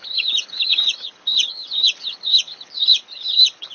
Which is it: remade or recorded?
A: remade